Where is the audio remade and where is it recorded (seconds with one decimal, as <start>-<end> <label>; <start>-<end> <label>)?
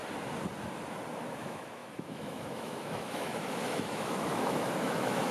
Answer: 0.0-1.4 recorded; 1.4-5.3 remade